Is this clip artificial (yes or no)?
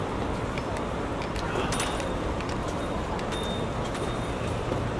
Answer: no